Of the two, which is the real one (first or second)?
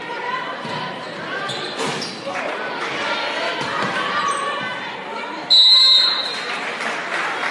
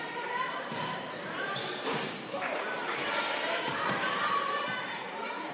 first